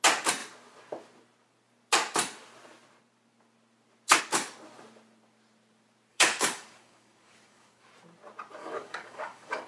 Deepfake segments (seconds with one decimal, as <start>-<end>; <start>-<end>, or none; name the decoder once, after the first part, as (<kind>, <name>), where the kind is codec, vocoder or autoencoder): 6.1-7.9 (codec, DAC); 8.6-9.7